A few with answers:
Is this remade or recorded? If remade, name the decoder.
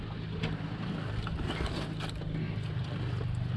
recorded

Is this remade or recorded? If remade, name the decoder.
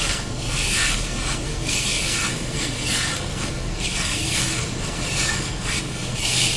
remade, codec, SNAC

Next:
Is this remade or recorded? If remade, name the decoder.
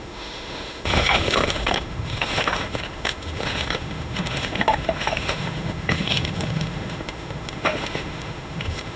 remade, autoencoder, DAC-VAE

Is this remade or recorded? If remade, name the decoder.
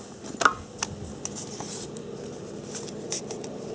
recorded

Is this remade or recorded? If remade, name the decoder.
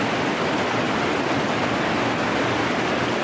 recorded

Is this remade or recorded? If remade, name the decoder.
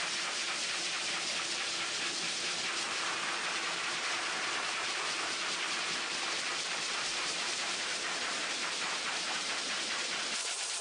remade, vocoder, BigVGAN v2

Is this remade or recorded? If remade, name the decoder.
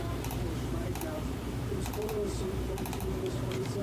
remade, vocoder, BigVGAN v2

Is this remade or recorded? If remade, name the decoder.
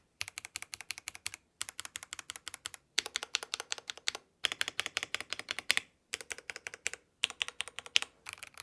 remade, vocoder, BigVGAN v2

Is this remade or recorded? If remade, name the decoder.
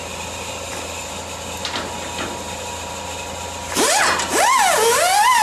recorded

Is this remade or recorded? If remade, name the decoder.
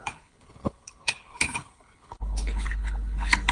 remade, codec, HILCodec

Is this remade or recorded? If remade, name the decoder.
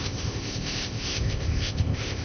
remade, codec, ZipCodec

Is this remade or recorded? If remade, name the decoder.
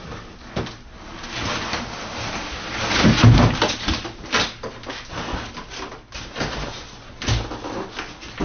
recorded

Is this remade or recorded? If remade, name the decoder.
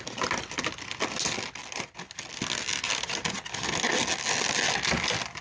recorded